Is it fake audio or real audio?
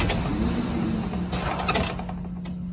real